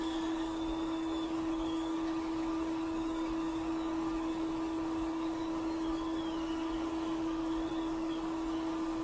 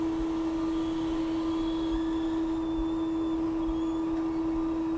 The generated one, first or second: first